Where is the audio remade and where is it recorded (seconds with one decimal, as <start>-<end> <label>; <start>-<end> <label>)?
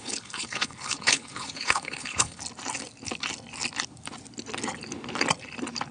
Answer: 0.0-2.4 remade; 2.4-5.9 recorded